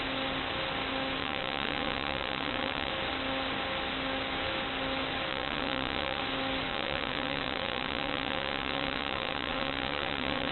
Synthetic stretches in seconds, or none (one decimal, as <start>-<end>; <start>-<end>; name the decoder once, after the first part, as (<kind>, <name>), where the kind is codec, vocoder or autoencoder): 1.2-2.9 (vocoder, WaveNeXt); 5.3-6.2; 6.7-10.5